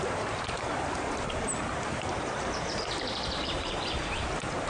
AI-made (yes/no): yes